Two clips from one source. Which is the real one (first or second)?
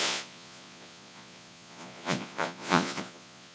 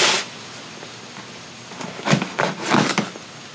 second